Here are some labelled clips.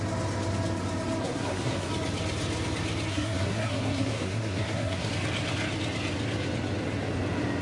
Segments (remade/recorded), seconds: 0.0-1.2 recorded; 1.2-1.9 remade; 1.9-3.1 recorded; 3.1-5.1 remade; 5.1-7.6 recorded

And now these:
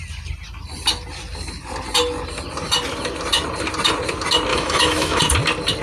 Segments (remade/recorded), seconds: 0.0-4.5 recorded; 4.5-5.2 remade; 5.2-5.8 recorded

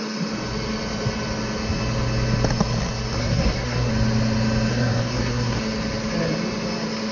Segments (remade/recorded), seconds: 0.0-3.2 recorded; 3.2-3.9 remade; 3.9-4.7 recorded; 4.7-5.6 remade; 5.6-7.1 recorded

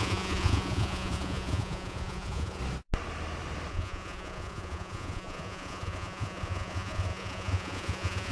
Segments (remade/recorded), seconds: 0.0-2.6 remade; 2.6-3.7 recorded; 3.7-8.3 remade